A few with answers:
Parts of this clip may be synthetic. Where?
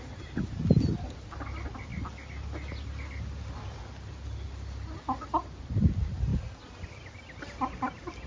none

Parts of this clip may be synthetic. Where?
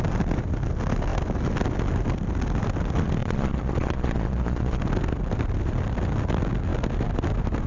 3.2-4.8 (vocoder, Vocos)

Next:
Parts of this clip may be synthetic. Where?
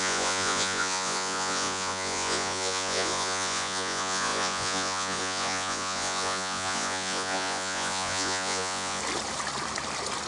0.0-9.0 (vocoder, Vocos)